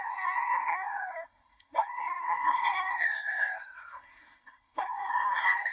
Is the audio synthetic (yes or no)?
yes